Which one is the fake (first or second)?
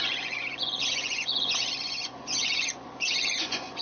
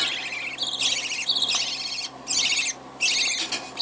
first